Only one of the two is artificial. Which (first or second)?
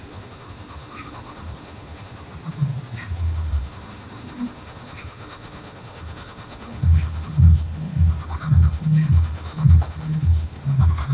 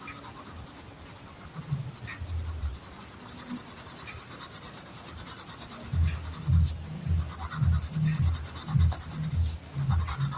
first